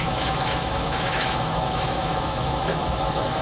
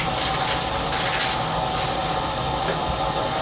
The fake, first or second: first